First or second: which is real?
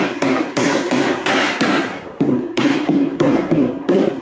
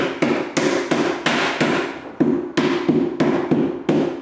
second